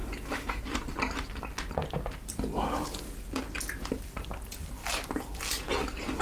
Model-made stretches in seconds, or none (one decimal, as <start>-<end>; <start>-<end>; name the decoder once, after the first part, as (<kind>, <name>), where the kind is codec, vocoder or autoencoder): 0.0-0.6 (autoencoder, DAC-VAE)